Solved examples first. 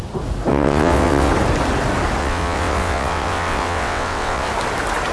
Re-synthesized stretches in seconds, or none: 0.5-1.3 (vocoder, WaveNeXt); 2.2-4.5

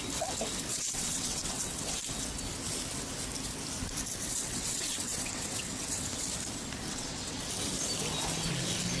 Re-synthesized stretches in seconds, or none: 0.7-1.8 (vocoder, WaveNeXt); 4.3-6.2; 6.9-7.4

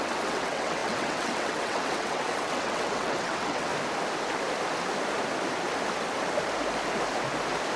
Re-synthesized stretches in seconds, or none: 0.0-3.7 (vocoder, WaveNeXt)

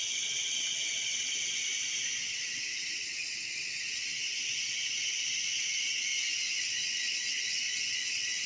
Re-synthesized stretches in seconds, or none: 0.0-1.7 (vocoder, WaveNeXt); 2.3-6.1; 6.6-8.5

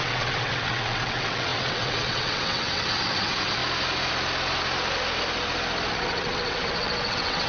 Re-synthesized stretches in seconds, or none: 0.0-3.6 (vocoder, WaveNeXt); 5.9-7.5